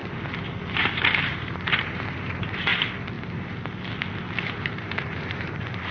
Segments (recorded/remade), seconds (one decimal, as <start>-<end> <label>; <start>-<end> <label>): 0.0-0.7 recorded; 0.7-2.7 remade; 2.7-4.6 recorded; 4.6-5.9 remade